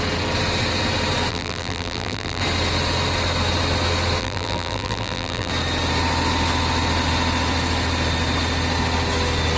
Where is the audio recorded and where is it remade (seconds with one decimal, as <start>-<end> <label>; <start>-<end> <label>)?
0.0-1.3 recorded; 1.3-2.4 remade; 2.4-4.2 recorded; 4.2-5.5 remade; 5.5-9.6 recorded

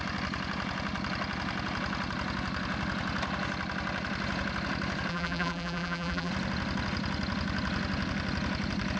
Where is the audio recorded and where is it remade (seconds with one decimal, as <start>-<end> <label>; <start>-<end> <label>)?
0.0-5.1 recorded; 5.1-6.3 remade; 6.3-9.0 recorded

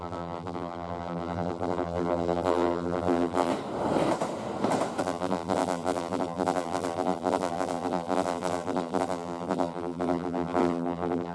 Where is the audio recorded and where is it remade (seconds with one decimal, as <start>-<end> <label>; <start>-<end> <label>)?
0.0-3.5 remade; 3.5-5.0 recorded; 5.0-11.3 remade

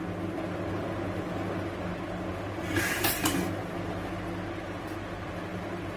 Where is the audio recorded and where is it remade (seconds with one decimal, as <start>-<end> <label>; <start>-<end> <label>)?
0.0-2.3 recorded; 2.3-3.6 remade; 3.6-6.0 recorded